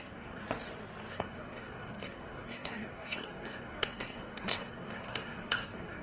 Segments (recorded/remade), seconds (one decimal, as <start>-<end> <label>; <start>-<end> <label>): 0.0-0.4 remade; 0.4-1.1 recorded; 1.1-6.0 remade